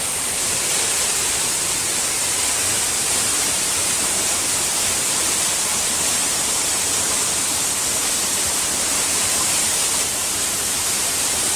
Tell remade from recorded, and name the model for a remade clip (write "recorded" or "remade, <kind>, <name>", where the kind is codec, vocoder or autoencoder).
remade, vocoder, BigVGAN v2